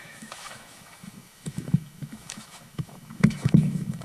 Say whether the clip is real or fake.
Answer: fake